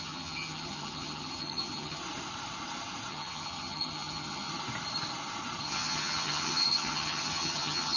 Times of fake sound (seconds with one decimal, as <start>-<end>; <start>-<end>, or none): 0.0-2.0; 3.1-4.5; 5.6-8.0